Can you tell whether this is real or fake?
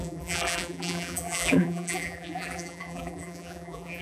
fake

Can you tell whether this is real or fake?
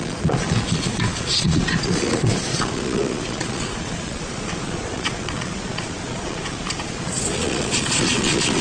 fake